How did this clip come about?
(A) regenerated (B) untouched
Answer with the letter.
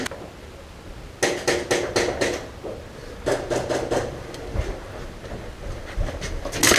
B